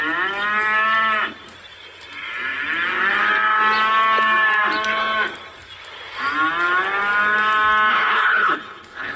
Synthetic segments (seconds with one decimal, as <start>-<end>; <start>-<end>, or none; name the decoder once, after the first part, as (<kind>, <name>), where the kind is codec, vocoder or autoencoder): 7.9-9.2 (codec, HILCodec)